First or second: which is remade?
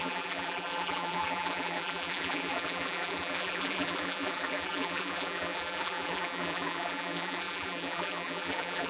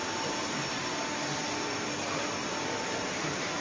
first